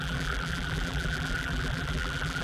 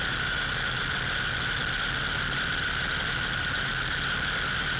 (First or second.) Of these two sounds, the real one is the second